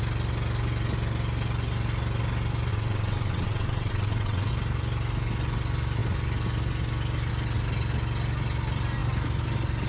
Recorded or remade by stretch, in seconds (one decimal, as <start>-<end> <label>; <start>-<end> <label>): 0.0-2.7 recorded; 2.7-4.5 remade; 4.5-9.9 recorded